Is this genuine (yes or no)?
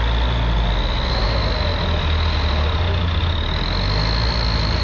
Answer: yes